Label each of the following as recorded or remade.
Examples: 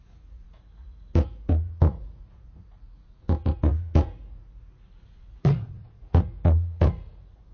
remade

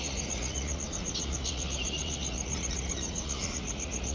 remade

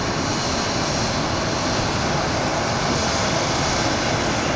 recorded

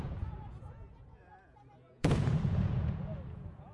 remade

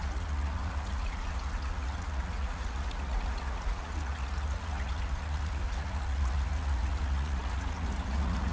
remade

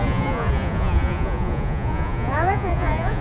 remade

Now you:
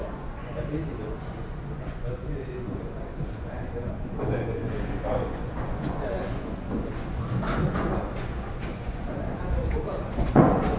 remade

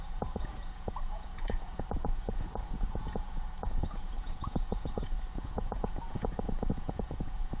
remade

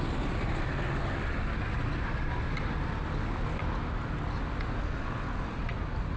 recorded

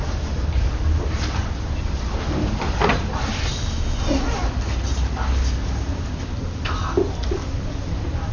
recorded